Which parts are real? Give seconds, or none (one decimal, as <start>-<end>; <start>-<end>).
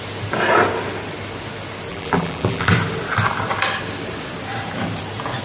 0.0-1.9; 2.7-5.4